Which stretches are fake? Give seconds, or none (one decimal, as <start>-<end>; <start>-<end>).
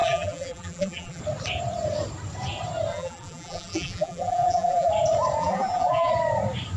0.0-1.2; 2.9-4.9; 5.4-6.1